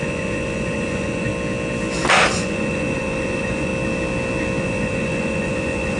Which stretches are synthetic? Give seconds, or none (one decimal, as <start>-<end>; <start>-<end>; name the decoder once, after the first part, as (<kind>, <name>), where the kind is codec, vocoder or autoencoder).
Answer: 0.0-1.3 (vocoder, Vocos); 2.3-3.7; 4.6-6.0